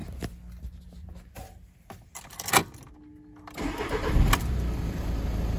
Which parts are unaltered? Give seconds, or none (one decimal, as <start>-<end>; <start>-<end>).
0.0-5.6